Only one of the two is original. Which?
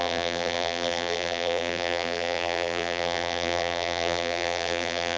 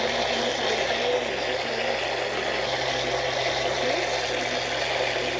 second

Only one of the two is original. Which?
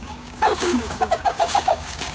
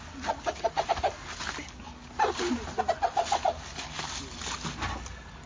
second